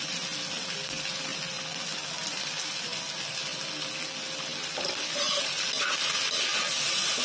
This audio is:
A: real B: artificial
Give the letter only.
A